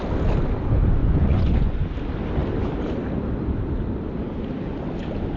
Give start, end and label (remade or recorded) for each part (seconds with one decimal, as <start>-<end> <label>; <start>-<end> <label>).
0.0-1.0 recorded; 1.0-1.7 remade; 1.7-5.4 recorded